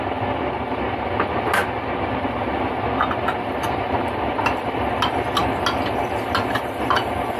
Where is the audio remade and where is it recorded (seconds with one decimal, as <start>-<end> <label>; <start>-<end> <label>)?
0.0-7.4 recorded